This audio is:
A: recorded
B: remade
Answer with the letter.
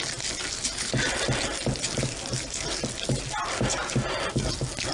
A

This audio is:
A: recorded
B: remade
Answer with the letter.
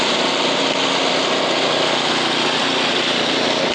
A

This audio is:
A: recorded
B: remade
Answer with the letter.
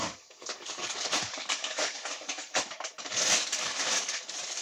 B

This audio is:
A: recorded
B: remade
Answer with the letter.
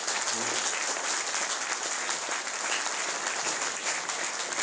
A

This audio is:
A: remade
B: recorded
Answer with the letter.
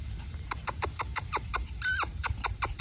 A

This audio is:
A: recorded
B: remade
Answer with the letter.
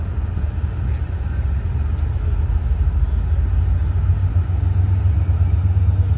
A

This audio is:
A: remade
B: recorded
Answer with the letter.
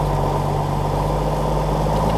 B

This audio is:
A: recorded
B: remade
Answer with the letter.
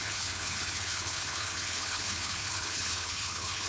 B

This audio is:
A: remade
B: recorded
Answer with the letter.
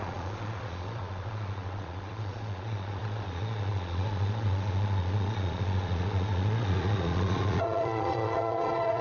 A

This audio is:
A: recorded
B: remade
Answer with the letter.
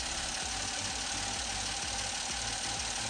A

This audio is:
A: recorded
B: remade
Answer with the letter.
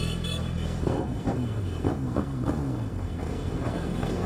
B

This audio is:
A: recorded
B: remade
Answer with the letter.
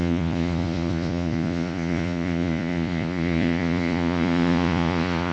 B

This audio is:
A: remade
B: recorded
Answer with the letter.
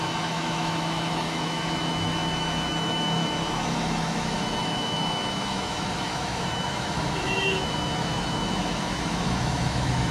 A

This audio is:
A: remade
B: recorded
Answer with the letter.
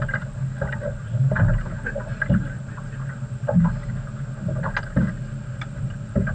B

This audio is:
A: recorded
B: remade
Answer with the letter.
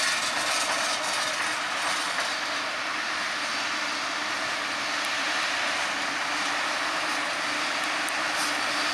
A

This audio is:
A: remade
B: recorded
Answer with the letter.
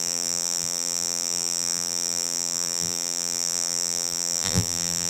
A